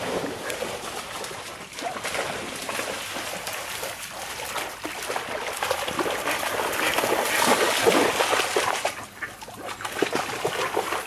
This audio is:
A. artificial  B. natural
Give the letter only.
B